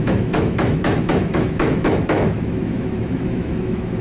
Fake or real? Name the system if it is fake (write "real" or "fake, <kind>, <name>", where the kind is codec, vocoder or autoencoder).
fake, autoencoder, DAC-VAE